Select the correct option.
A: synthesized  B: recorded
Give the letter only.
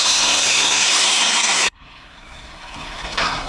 A